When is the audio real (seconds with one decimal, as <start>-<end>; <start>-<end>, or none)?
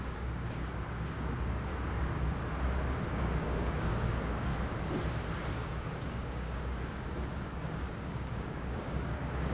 1.7-3.1; 4.5-5.5